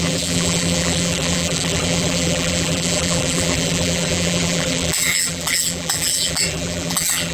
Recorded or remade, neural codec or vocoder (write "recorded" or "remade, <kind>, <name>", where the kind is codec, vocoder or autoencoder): remade, vocoder, BigVGAN v2